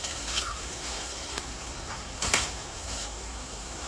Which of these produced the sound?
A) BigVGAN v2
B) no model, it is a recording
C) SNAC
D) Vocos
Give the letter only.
C